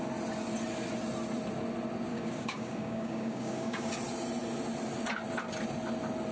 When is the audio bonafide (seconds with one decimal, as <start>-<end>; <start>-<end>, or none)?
0.0-2.1; 3.9-6.3